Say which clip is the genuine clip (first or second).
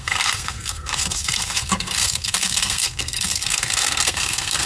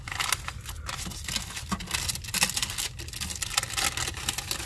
second